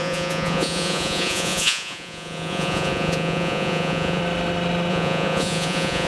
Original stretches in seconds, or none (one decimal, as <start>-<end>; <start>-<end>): 4.2-4.9